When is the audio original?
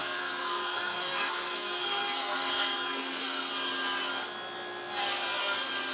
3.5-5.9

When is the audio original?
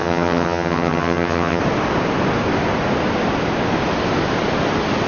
1.6-5.1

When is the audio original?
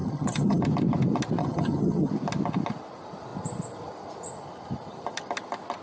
0.6-1.4; 2.1-5.8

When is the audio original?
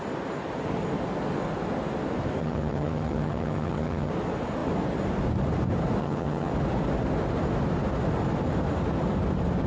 0.0-2.4; 4.1-6.0; 6.5-9.7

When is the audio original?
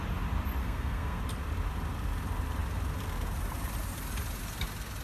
0.0-0.6; 1.2-5.0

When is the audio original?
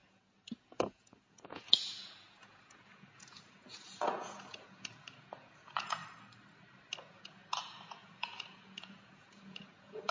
6.0-7.0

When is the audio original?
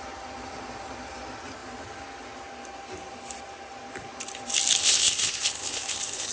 0.0-4.8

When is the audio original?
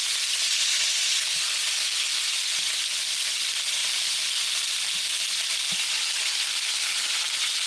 0.0-3.8; 4.9-6.3; 7.2-7.7